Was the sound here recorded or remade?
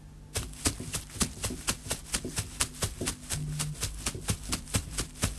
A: recorded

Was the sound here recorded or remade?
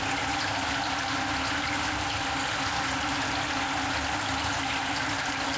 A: recorded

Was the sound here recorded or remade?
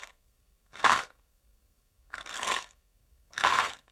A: remade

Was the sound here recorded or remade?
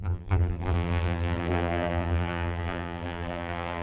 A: remade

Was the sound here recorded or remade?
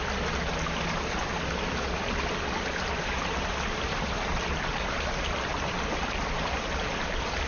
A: recorded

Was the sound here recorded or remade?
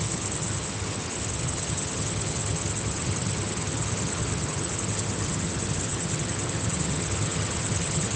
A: remade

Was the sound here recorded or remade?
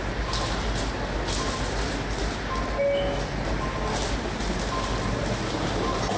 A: recorded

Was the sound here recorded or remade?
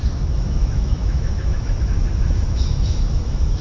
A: remade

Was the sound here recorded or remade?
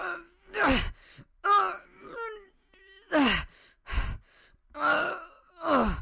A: recorded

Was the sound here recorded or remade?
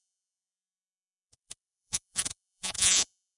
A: remade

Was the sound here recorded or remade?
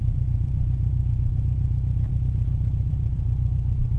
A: remade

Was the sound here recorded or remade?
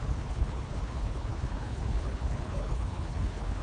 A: remade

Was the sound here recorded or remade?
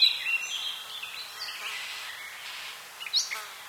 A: recorded